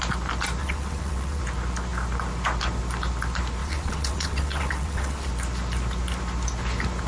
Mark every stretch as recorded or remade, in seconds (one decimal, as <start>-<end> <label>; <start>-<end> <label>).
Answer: 0.0-0.6 recorded; 0.6-1.4 remade; 1.4-3.6 recorded; 3.6-5.3 remade; 5.3-7.1 recorded